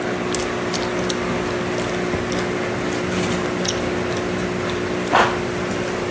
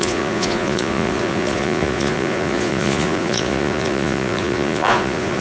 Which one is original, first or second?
first